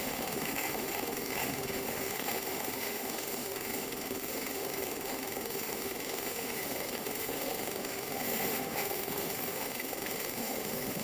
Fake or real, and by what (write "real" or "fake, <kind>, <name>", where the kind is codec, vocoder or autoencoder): fake, autoencoder, DAC-VAE